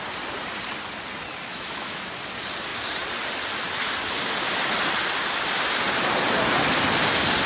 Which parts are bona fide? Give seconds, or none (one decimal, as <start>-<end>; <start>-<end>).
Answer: 0.0-1.5; 2.1-7.5